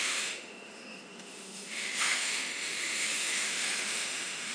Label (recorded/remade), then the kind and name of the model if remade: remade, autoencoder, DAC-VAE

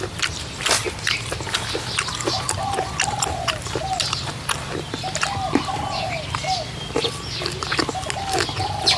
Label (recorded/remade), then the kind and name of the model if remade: recorded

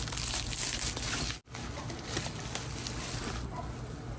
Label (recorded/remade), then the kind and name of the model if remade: recorded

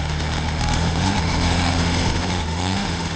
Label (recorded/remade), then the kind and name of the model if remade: remade, autoencoder, DAC-VAE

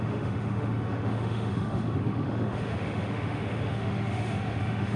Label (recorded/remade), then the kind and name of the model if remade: remade, autoencoder, DAC-VAE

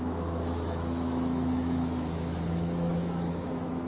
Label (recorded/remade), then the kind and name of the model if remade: remade, autoencoder, DAC-VAE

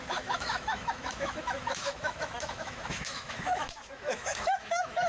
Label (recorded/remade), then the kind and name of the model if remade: remade, autoencoder, DAC-VAE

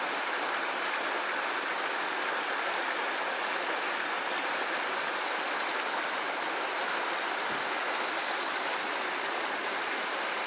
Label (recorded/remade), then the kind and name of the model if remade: recorded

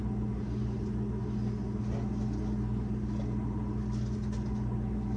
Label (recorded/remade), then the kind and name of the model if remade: recorded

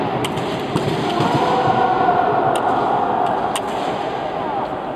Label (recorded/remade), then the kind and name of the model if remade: recorded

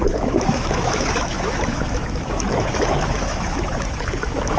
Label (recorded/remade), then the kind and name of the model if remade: remade, autoencoder, DAC-VAE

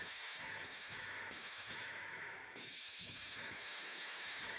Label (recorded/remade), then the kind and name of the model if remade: remade, autoencoder, DAC-VAE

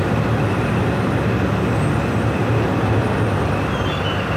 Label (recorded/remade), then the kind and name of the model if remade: recorded